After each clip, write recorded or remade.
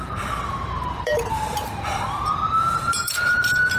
remade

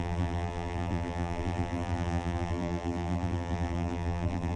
remade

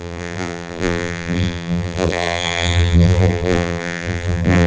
remade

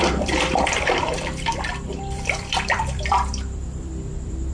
remade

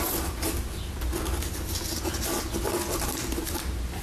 recorded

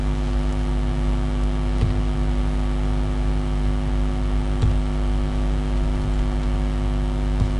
recorded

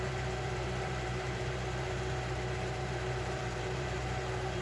remade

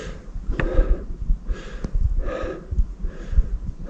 remade